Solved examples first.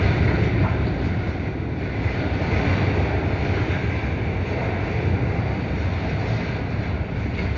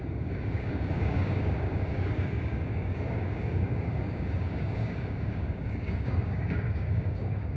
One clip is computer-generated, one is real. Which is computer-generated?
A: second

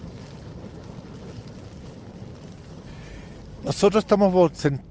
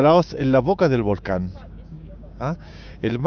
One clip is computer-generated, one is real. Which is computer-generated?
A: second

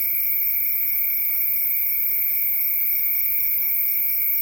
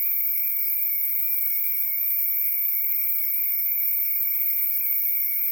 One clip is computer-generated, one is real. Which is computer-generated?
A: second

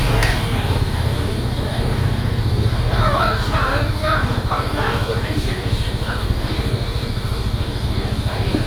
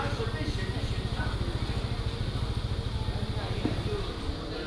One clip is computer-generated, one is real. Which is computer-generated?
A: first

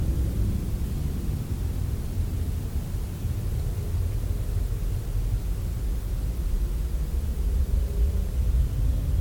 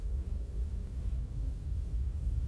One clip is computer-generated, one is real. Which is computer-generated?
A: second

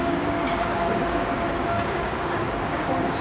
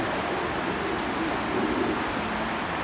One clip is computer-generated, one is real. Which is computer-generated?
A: first